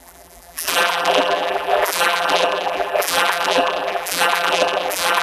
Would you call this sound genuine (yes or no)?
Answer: no